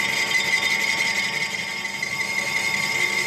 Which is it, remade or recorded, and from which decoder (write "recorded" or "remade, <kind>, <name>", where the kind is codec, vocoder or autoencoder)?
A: recorded